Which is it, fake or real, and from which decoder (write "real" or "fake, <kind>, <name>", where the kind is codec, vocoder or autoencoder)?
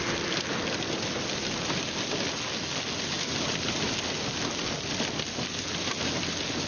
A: real